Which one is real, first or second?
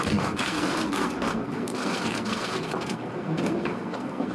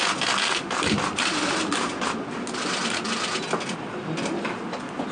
second